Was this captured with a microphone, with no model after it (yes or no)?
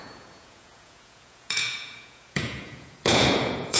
no